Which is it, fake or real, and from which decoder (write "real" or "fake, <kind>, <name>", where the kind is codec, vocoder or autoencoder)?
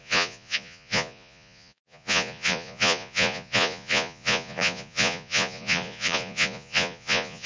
fake, vocoder, Vocos